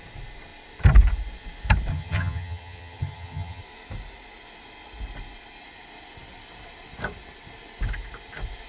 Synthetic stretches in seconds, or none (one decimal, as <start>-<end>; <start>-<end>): 1.9-3.6